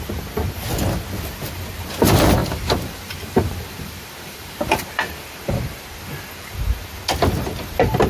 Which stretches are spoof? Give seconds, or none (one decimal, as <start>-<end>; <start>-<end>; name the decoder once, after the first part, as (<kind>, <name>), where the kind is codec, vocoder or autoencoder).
2.4-6.6 (vocoder, BigVGAN v2)